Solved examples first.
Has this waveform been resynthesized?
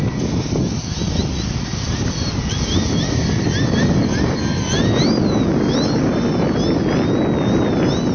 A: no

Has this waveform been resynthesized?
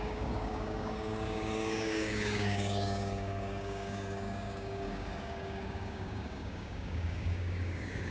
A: yes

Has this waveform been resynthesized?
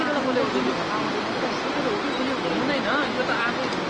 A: no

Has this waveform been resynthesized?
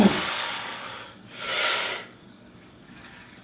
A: yes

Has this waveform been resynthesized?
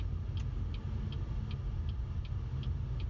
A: no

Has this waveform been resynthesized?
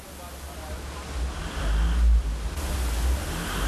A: no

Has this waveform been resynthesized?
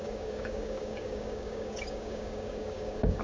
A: yes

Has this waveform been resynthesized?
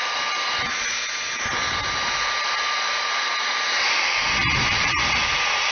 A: no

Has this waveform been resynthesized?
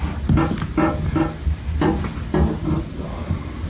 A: no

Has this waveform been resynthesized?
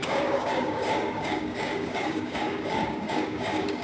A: yes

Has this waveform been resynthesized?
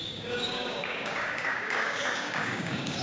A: yes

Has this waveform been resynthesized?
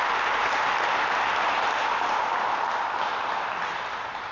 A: no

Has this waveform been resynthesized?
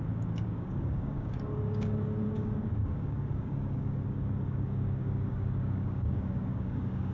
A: yes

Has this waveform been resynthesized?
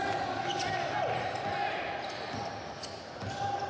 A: no